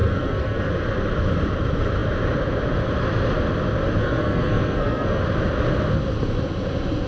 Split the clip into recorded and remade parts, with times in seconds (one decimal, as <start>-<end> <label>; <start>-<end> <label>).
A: 0.0-0.7 remade; 0.7-4.0 recorded; 4.0-5.2 remade; 5.2-7.1 recorded